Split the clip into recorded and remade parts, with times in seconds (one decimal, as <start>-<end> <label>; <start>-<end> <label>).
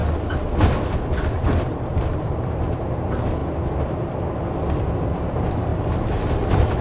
0.0-2.0 recorded; 2.0-3.4 remade; 3.4-4.7 recorded; 4.7-6.8 remade